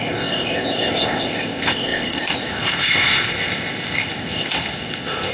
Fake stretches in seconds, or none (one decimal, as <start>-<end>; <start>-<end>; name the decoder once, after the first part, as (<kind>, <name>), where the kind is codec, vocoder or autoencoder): 0.0-5.3 (codec, ZipCodec)